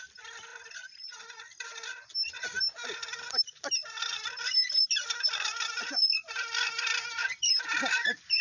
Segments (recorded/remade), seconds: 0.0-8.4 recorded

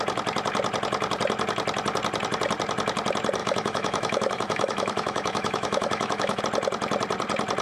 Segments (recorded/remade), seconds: 0.0-3.4 recorded; 3.4-6.4 remade; 6.4-7.6 recorded

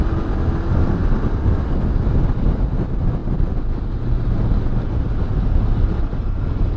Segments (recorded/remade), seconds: 0.0-6.8 recorded

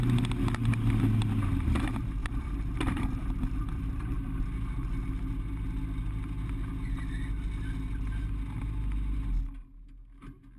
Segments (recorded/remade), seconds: 0.0-2.2 recorded; 2.2-4.4 remade; 4.4-10.6 recorded

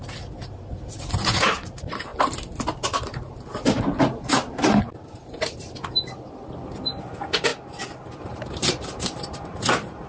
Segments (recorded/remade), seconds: 0.0-1.4 recorded; 1.4-2.1 remade; 2.1-6.7 recorded; 6.7-7.5 remade; 7.5-8.2 recorded; 8.2-10.1 remade

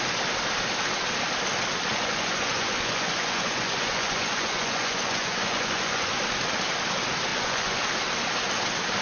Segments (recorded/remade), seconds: 0.0-1.9 recorded; 1.9-6.2 remade; 6.2-7.3 recorded; 7.3-7.8 remade; 7.8-9.0 recorded

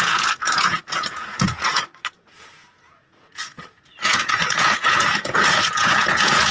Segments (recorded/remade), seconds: 0.0-6.5 remade

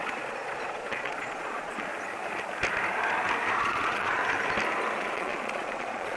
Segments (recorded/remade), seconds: 0.0-1.9 remade; 1.9-3.6 recorded; 3.6-4.2 remade; 4.2-5.0 recorded; 5.0-6.2 remade